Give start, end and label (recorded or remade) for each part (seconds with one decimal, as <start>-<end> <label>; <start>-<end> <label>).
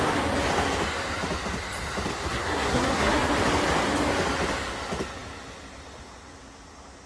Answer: 0.0-2.1 recorded; 2.1-3.3 remade; 3.3-7.1 recorded